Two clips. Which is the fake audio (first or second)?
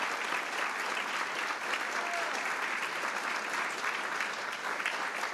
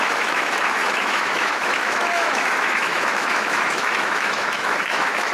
second